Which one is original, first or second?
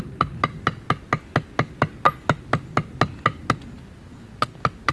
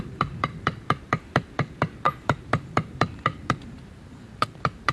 first